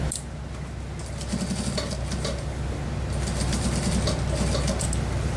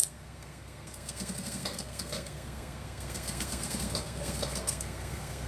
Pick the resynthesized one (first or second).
second